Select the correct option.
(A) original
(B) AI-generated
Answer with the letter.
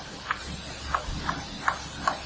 A